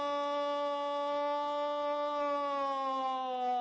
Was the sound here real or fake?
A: real